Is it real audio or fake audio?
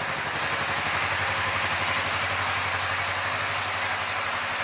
real